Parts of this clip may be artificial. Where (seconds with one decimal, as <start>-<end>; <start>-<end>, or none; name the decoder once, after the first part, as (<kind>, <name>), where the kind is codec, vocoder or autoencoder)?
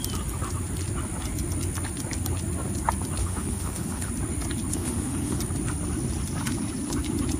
3.2-4.1 (autoencoder, DAC-VAE); 4.7-5.4